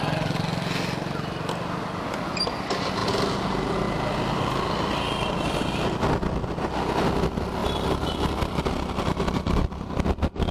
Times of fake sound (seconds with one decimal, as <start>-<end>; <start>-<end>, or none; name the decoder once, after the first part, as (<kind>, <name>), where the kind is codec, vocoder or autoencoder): 7.6-8.6 (vocoder, BigVGAN v2)